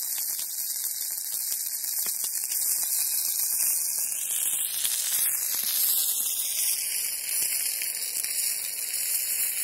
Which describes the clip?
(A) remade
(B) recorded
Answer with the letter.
B